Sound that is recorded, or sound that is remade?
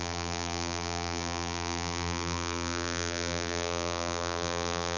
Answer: remade